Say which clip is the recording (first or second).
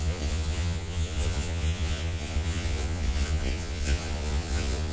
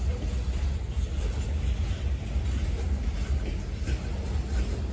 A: second